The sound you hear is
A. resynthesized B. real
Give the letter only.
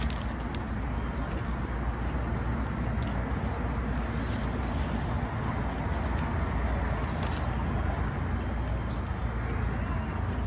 B